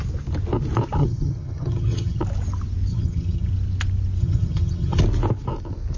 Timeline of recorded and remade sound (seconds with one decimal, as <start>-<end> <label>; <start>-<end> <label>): 0.0-1.0 recorded; 1.0-2.2 remade; 2.2-2.9 recorded; 2.9-3.5 remade; 3.5-4.2 recorded; 4.2-5.0 remade; 5.0-6.0 recorded